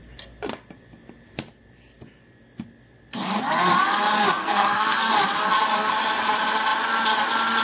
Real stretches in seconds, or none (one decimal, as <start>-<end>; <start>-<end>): 0.0-4.4; 5.1-7.6